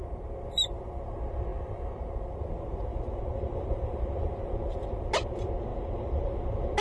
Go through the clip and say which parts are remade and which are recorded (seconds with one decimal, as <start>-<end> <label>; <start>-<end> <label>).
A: 0.0-2.9 recorded; 2.9-4.5 remade; 4.5-5.7 recorded; 5.7-6.3 remade; 6.3-6.8 recorded

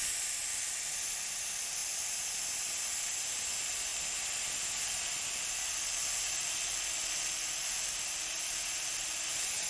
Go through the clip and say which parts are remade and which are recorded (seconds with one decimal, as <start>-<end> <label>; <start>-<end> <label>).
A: 0.0-3.9 recorded; 3.9-4.7 remade; 4.7-9.7 recorded

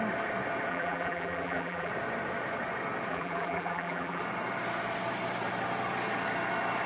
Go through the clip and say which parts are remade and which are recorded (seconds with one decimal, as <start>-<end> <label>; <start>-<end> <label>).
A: 0.0-0.7 recorded; 0.7-1.9 remade; 1.9-3.1 recorded; 3.1-4.2 remade; 4.2-6.9 recorded

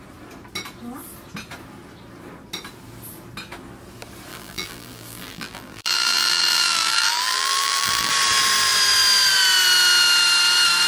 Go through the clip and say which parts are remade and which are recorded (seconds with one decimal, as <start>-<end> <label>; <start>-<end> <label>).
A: 0.0-4.3 recorded; 4.3-8.1 remade; 8.1-10.9 recorded

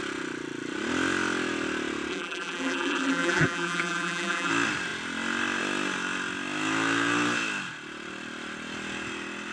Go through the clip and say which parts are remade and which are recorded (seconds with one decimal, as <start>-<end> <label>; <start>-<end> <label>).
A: 0.0-2.1 recorded; 2.1-4.5 remade; 4.5-9.5 recorded

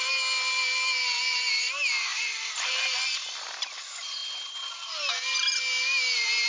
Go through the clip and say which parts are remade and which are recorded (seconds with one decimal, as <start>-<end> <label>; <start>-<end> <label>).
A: 0.0-2.1 recorded; 2.1-3.6 remade; 3.6-4.2 recorded; 4.2-4.9 remade; 4.9-6.5 recorded

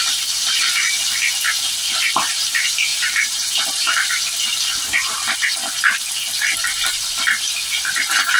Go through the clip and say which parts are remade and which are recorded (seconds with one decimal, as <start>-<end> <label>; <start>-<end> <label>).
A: 0.0-2.9 recorded; 2.9-4.1 remade; 4.1-8.4 recorded

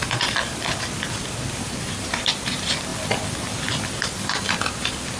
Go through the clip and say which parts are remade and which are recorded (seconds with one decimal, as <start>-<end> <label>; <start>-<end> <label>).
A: 0.0-2.5 remade; 2.5-5.2 recorded